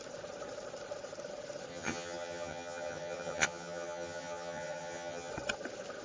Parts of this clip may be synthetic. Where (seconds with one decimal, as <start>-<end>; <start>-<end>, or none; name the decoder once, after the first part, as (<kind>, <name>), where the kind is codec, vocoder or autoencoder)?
1.7-5.3 (vocoder, HiFi-GAN)